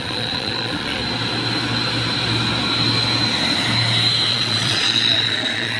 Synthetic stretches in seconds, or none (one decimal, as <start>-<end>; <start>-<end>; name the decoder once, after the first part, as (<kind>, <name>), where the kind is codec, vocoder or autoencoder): 0.0-1.0 (vocoder, Vocos); 4.3-5.8